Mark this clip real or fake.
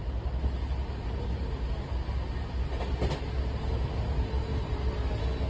real